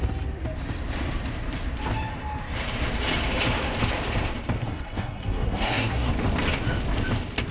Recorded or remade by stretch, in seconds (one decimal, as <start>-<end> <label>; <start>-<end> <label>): 0.0-4.6 recorded; 4.6-6.1 remade; 6.1-7.5 recorded

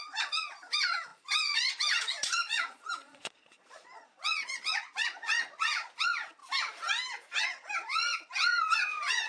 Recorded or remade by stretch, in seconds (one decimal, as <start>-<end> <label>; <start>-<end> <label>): 0.0-6.4 remade; 6.4-7.4 recorded; 7.4-9.3 remade

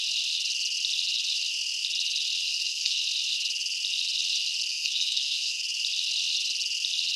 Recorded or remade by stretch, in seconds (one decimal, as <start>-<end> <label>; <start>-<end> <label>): 0.0-2.5 recorded; 2.5-3.0 remade; 3.0-4.7 recorded; 4.7-5.6 remade; 5.6-7.2 recorded

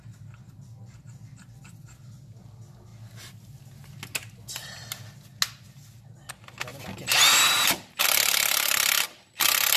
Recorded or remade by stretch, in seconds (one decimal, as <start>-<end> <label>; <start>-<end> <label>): 0.0-9.8 recorded

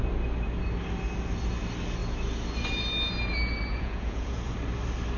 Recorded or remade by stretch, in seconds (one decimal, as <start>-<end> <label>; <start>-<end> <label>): 0.0-3.7 recorded; 3.7-4.5 remade; 4.5-5.2 recorded

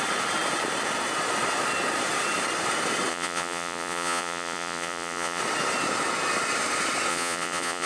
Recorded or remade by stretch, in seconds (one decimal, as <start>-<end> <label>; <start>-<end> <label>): 0.0-3.1 recorded; 3.1-5.4 remade; 5.4-7.1 recorded; 7.1-7.9 remade

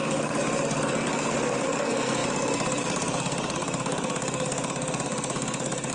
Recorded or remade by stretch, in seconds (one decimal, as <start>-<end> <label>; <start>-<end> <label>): 0.0-5.9 remade

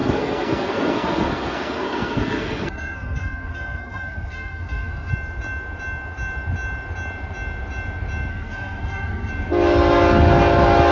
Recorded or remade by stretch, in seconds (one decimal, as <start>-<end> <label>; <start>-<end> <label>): 0.0-5.1 remade; 5.1-8.3 recorded; 8.3-9.3 remade; 9.3-10.9 recorded